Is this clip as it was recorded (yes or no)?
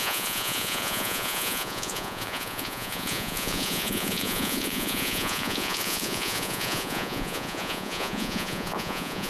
no